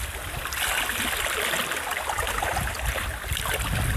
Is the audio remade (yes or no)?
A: no